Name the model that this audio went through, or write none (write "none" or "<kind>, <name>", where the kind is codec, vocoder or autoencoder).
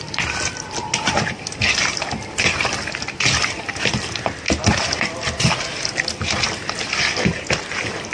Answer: none